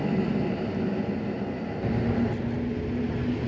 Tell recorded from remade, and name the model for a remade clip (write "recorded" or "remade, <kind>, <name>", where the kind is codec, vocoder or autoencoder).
recorded